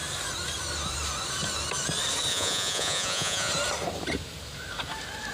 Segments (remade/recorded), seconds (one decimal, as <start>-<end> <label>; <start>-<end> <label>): 0.0-2.3 recorded; 2.3-3.5 remade; 3.5-5.3 recorded